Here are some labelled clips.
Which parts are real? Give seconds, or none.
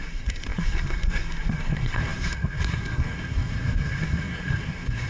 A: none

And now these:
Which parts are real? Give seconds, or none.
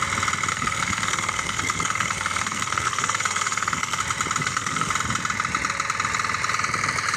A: 0.0-0.5; 4.0-4.4; 4.9-7.2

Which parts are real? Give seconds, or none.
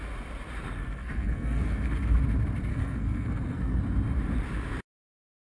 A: 0.0-0.8; 2.2-2.7; 3.8-5.4